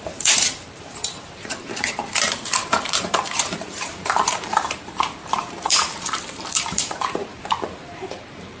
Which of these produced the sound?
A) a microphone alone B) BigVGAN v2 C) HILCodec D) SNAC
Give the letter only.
B